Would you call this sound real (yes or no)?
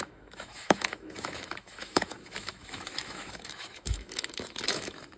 no